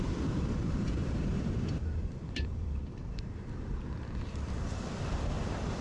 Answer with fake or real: fake